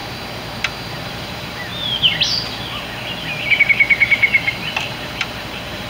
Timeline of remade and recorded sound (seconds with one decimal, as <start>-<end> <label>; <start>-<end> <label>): 0.0-0.9 recorded; 0.9-1.7 remade; 1.7-4.5 recorded; 4.5-5.9 remade